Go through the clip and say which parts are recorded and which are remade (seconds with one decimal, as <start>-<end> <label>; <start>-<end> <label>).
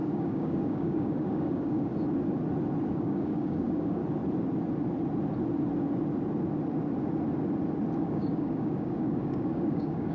0.0-1.9 remade; 1.9-2.9 recorded; 2.9-4.0 remade; 4.0-8.0 recorded; 8.0-10.1 remade